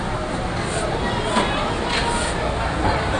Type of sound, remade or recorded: recorded